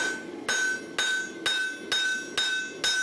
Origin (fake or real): real